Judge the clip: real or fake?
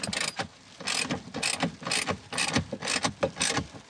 real